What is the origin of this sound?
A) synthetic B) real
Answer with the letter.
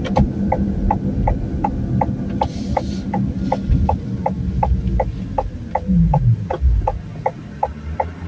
B